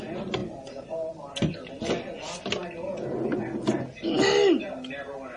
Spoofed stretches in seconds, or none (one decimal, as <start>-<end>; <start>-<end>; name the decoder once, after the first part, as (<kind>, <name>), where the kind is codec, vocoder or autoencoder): 0.4-3.4 (vocoder, BigVGAN v2)